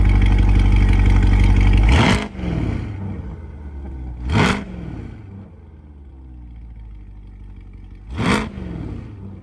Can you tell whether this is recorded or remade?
recorded